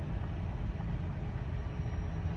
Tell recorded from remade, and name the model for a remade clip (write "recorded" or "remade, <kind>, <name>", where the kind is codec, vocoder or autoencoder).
recorded